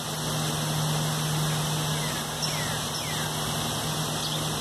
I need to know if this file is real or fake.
real